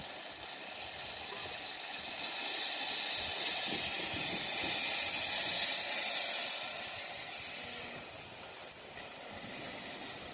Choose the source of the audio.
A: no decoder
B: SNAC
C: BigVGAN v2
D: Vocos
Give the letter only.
A